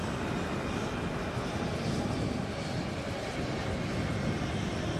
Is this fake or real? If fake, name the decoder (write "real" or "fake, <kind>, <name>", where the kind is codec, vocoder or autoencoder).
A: real